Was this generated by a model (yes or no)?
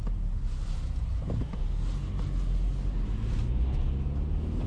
no